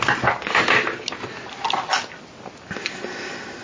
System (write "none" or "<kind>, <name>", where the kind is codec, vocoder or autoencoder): none